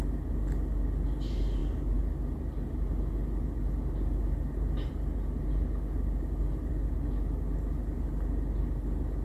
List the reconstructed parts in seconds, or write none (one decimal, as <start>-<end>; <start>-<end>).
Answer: none